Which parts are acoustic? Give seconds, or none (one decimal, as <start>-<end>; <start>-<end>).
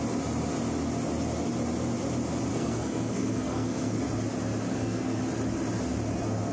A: 0.0-2.5; 4.0-4.7; 5.2-6.5